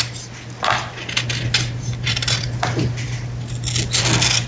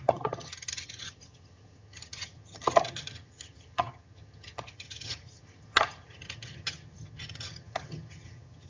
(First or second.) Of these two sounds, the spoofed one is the second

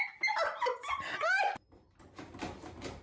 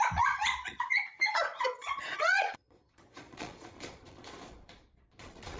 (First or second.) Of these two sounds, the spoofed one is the second